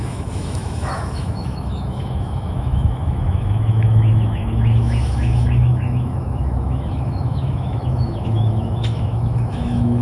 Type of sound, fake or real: fake